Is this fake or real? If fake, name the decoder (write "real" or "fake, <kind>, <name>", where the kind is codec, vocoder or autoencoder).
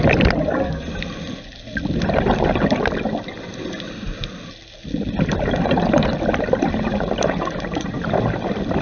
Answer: real